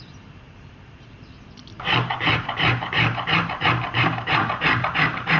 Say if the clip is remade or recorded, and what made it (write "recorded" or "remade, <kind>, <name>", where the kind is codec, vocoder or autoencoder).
remade, vocoder, BigVGAN v2